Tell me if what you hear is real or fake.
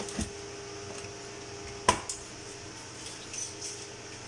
real